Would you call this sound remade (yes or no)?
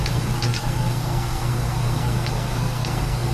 yes